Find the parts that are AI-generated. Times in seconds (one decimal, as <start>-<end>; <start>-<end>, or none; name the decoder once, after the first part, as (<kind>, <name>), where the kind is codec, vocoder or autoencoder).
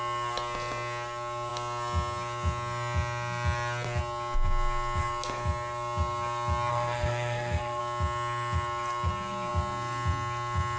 6.7-7.8 (codec, SNAC)